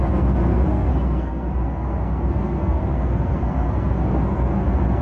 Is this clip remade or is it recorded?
remade